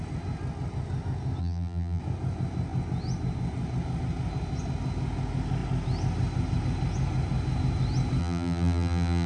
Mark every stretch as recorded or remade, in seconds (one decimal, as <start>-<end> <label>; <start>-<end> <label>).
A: 0.0-1.4 recorded; 1.4-2.0 remade; 2.0-8.2 recorded; 8.2-9.3 remade